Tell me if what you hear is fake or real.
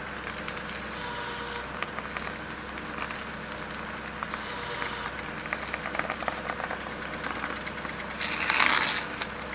real